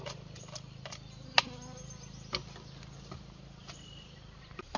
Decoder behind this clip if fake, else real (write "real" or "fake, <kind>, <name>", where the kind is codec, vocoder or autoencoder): real